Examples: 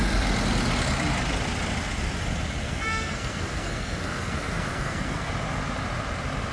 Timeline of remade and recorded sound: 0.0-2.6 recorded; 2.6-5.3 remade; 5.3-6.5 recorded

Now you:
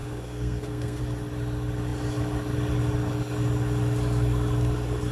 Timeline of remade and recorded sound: 0.0-1.0 remade; 1.0-5.1 recorded

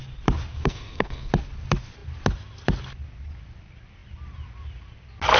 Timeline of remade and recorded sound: 0.0-0.5 recorded; 0.5-1.3 remade; 1.3-5.4 recorded

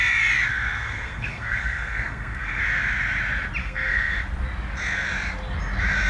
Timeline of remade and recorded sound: 0.0-0.5 recorded; 0.5-2.6 remade; 2.6-3.6 recorded; 3.6-4.2 remade; 4.2-6.1 recorded

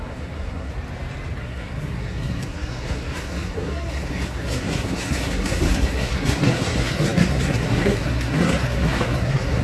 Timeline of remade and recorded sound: 0.0-0.7 remade; 0.7-1.4 recorded; 1.4-9.6 remade